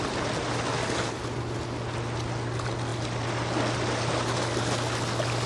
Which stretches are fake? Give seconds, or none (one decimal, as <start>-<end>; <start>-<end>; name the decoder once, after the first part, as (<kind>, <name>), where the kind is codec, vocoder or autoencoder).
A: none

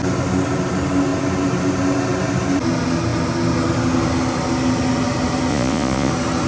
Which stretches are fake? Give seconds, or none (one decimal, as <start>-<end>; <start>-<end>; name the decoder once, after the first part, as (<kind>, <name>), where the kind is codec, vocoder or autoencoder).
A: 5.5-6.1 (vocoder, Vocos)

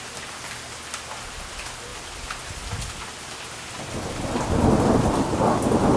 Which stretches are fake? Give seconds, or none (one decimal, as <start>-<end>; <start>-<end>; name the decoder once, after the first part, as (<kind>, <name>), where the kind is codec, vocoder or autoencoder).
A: none

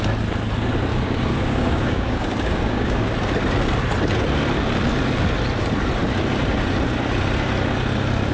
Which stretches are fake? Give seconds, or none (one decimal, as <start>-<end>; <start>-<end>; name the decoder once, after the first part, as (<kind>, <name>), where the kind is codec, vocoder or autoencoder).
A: 0.9-3.0 (codec, DAC)

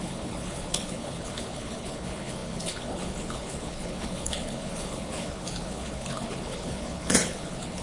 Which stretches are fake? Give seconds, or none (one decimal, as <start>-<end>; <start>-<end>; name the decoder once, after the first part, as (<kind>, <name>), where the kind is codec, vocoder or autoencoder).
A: 0.0-7.8 (codec, HILCodec)